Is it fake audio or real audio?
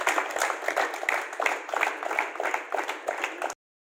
real